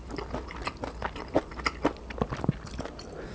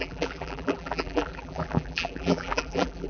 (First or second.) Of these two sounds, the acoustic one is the first